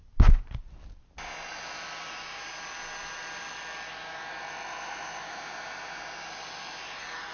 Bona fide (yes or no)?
yes